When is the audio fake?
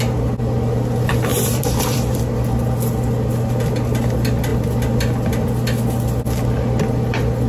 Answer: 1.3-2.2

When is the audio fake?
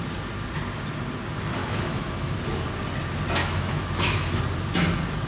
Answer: 1.6-2.3; 3.4-4.4